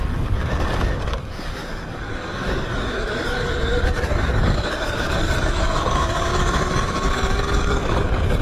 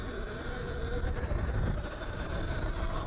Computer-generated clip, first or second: first